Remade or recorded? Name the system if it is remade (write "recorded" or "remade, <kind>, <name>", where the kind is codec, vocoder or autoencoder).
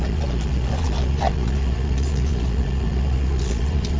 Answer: remade, vocoder, Vocos